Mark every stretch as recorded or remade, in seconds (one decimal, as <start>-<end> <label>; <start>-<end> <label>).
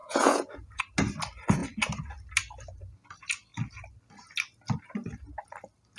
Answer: 0.0-0.8 remade; 0.8-6.0 recorded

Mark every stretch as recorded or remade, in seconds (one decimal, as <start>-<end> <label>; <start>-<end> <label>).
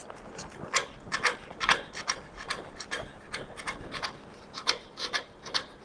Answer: 0.0-5.8 recorded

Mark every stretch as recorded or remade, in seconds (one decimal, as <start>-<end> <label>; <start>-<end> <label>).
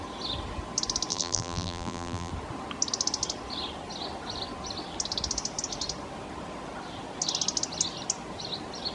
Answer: 0.0-1.1 recorded; 1.1-2.3 remade; 2.3-8.9 recorded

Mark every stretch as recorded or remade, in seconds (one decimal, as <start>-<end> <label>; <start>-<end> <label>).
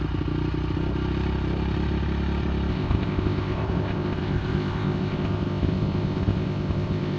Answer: 0.0-2.7 recorded; 2.7-7.2 remade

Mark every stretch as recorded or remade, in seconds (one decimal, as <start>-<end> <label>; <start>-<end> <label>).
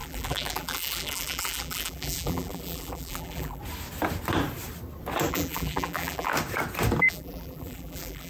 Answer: 0.0-3.6 remade; 3.6-5.3 recorded; 5.3-6.3 remade; 6.3-7.0 recorded; 7.0-8.3 remade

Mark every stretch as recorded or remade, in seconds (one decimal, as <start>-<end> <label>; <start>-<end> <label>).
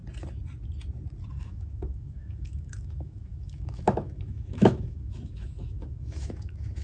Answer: 0.0-1.4 recorded; 1.4-6.8 remade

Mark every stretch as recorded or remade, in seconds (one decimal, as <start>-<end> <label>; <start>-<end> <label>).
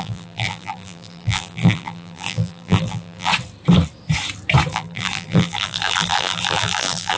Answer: 0.0-3.3 remade; 3.3-4.7 recorded; 4.7-7.2 remade